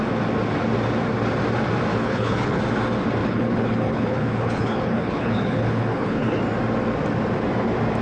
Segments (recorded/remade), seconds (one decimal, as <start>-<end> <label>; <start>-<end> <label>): 0.0-1.9 recorded; 1.9-2.6 remade; 2.6-3.2 recorded; 3.2-6.4 remade; 6.4-8.0 recorded

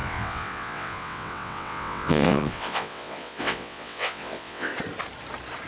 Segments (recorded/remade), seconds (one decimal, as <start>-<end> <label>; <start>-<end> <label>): 0.0-4.7 remade; 4.7-5.7 recorded

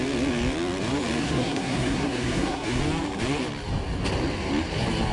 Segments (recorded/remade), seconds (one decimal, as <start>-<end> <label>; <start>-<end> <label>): 0.0-1.2 recorded; 1.2-2.8 remade; 2.8-5.1 recorded

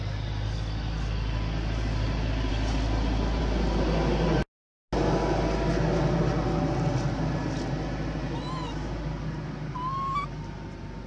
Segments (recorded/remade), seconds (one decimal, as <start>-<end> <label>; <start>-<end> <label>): 0.0-11.1 recorded